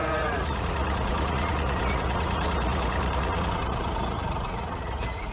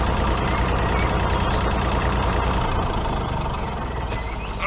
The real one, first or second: second